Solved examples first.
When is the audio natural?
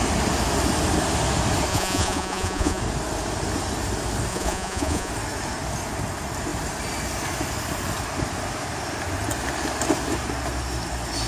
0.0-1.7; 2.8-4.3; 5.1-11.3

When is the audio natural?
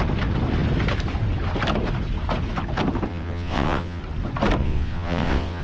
0.0-3.1; 4.0-4.6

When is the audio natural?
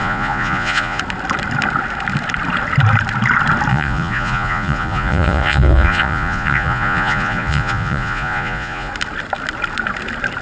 1.0-3.7; 8.9-10.4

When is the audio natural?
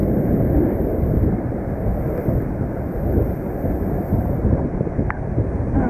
0.0-0.7; 1.9-5.4